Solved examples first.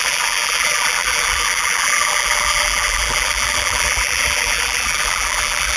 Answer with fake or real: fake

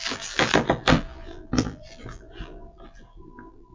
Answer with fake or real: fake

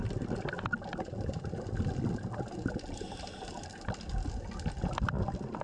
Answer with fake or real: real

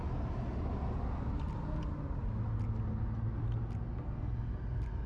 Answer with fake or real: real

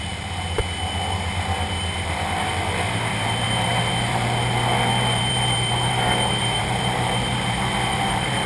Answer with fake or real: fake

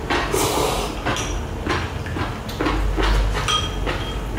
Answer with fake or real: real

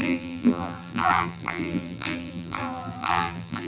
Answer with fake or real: fake